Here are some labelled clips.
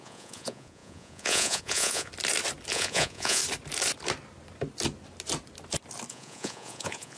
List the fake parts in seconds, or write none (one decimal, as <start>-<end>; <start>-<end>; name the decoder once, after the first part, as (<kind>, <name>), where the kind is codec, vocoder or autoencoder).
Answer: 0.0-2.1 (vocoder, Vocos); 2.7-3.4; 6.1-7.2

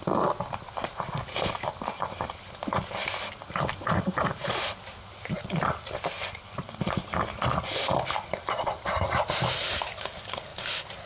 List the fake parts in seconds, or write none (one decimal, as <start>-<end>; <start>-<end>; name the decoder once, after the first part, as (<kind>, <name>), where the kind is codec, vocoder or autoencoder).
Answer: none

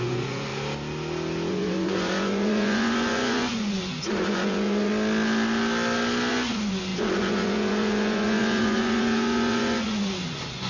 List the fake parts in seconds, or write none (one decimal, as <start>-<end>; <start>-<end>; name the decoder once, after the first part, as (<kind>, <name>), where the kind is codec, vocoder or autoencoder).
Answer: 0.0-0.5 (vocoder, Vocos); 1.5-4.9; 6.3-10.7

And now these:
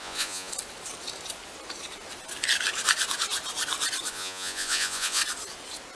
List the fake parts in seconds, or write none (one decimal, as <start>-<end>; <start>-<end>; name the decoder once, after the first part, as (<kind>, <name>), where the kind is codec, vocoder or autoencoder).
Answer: 0.0-0.5 (vocoder, Vocos); 4.1-5.2

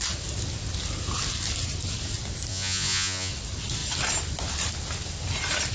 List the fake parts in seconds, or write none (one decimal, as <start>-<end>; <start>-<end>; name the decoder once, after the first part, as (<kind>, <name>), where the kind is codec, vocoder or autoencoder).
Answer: 2.5-3.3 (vocoder, Vocos)

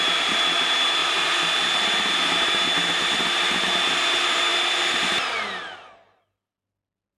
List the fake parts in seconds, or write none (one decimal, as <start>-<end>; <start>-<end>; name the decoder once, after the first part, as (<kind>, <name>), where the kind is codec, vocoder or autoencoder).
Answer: none

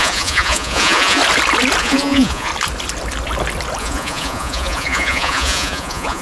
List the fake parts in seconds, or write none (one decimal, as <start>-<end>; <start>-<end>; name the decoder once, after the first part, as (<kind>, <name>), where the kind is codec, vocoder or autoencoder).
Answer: 0.0-1.2 (vocoder, Vocos); 1.8-2.5; 3.8-6.2

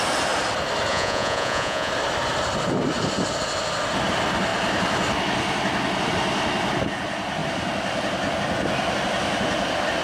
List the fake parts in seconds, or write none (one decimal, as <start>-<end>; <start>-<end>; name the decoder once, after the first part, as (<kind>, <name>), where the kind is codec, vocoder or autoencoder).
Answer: 0.9-1.9 (vocoder, Vocos)